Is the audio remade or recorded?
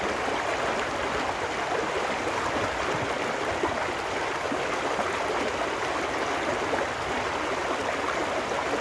recorded